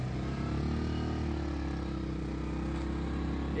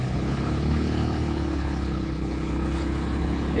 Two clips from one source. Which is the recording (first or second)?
first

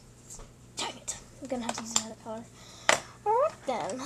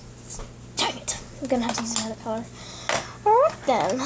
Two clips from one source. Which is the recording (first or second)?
second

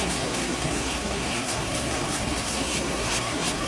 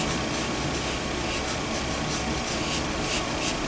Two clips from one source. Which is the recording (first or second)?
second